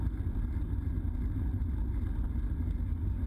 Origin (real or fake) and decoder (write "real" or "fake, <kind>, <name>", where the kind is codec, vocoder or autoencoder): real